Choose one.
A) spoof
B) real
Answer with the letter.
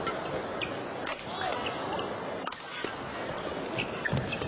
B